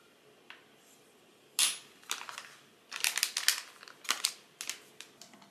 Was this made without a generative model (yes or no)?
yes